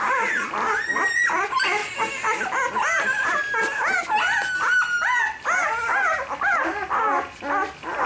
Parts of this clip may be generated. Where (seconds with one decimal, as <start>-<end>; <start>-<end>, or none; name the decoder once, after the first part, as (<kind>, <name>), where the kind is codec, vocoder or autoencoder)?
none